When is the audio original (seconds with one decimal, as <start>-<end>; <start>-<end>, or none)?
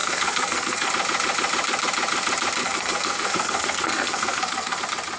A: 0.9-2.6; 4.8-5.2